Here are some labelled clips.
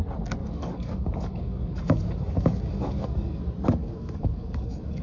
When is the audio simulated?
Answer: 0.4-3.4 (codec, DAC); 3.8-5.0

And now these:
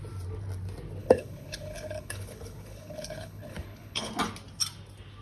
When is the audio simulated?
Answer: 1.0-4.1 (codec, HILCodec)

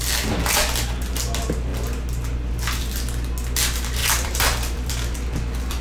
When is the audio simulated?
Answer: 4.0-4.9 (vocoder, BigVGAN v2)

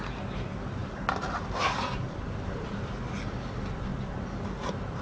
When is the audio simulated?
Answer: none

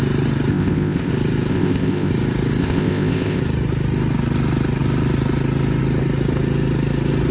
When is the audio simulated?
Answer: 0.5-1.1 (codec, ZipCodec); 1.5-2.1; 2.6-3.4

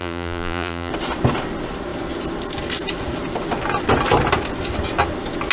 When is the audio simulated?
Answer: 0.0-0.9 (vocoder, BigVGAN v2)

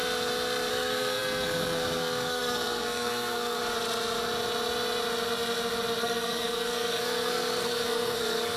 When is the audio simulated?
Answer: 0.7-3.6 (codec, SNAC); 6.0-8.6